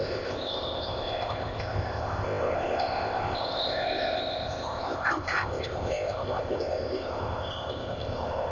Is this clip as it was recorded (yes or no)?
no